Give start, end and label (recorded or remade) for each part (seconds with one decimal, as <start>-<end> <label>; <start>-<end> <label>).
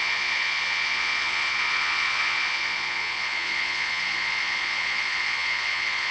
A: 0.0-6.1 remade